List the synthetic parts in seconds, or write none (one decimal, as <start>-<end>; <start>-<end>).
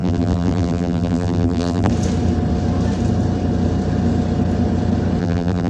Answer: 0.0-1.9; 5.2-5.7